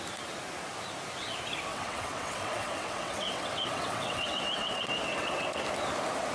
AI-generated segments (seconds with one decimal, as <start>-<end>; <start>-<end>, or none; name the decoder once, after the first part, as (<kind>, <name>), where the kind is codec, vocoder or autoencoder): 1.7-5.5 (vocoder, WaveNeXt)